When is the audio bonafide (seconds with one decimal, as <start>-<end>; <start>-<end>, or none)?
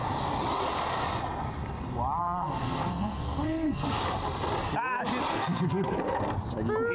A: 0.0-2.2; 3.9-5.3; 6.2-6.9